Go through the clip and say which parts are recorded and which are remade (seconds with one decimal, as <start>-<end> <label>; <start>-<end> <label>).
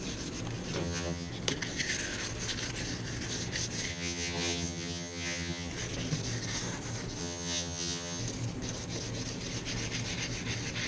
0.0-0.8 recorded; 0.8-1.3 remade; 1.3-3.9 recorded; 3.9-5.7 remade; 5.7-7.2 recorded; 7.2-8.2 remade; 8.2-10.9 recorded